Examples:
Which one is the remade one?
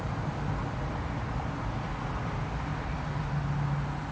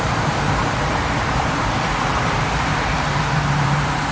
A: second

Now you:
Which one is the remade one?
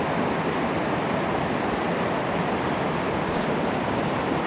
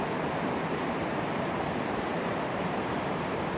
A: second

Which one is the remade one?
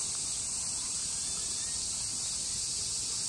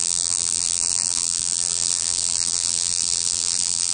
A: second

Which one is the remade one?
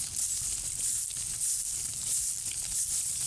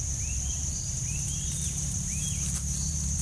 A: second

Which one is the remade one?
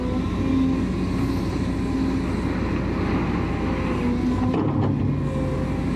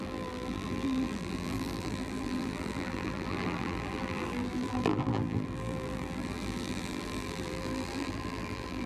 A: second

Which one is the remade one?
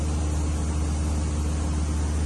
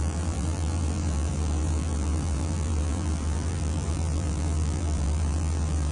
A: second